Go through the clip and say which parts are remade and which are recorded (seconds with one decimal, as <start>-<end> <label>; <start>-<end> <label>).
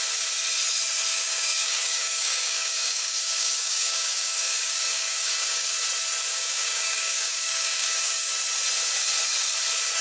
0.0-1.1 recorded; 1.1-5.7 remade; 5.7-6.3 recorded; 6.3-8.3 remade; 8.3-10.0 recorded